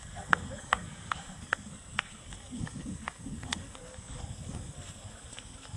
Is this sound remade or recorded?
remade